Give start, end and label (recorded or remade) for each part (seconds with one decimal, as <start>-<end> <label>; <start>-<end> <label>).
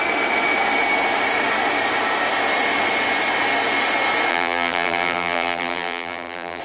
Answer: 0.0-4.3 recorded; 4.3-6.6 remade